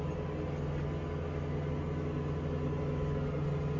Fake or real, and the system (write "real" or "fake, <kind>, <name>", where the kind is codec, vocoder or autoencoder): real